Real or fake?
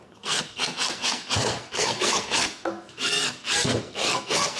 fake